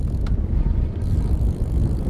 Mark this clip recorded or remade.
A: recorded